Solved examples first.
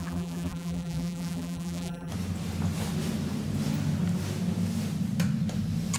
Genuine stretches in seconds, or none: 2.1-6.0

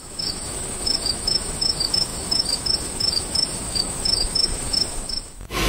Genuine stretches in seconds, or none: none